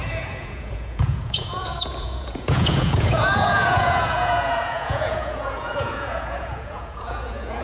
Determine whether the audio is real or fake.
fake